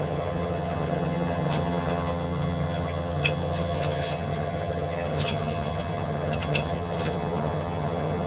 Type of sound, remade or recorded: remade